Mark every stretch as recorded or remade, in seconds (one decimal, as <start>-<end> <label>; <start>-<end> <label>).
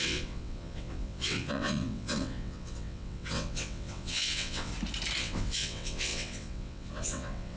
0.0-4.7 remade; 4.7-5.2 recorded; 5.2-7.6 remade